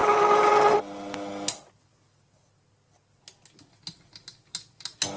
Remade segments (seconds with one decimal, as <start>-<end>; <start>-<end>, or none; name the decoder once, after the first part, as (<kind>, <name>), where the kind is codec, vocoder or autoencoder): 0.0-0.5 (codec, DAC)